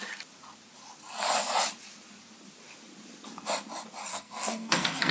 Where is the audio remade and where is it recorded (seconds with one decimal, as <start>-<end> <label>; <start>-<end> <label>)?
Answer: 0.0-4.1 recorded; 4.1-5.1 remade